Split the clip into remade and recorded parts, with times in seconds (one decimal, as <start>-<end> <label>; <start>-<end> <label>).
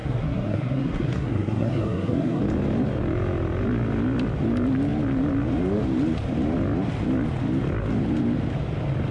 0.0-2.4 remade; 2.4-9.1 recorded